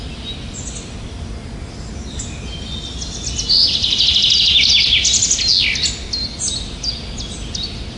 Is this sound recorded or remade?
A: recorded